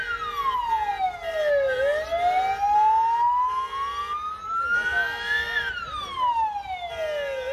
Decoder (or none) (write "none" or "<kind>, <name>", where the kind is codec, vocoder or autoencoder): none